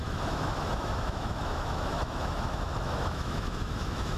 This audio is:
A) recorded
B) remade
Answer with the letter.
B